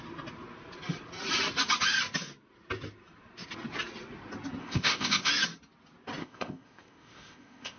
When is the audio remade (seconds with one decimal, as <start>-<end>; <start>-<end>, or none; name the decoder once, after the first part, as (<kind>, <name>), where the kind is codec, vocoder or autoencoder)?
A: 4.6-5.3 (codec, ZipCodec); 6.2-7.8